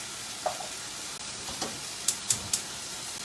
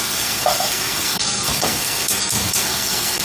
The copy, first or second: second